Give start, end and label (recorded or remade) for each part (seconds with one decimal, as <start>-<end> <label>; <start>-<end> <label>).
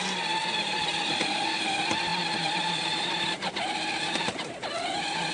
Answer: 0.0-0.4 recorded; 0.4-1.6 remade; 1.6-2.1 recorded; 2.1-4.6 remade; 4.6-5.3 recorded